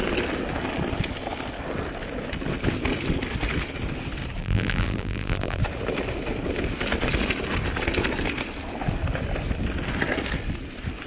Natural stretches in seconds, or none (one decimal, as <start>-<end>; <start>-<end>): 0.0-4.4; 5.6-11.1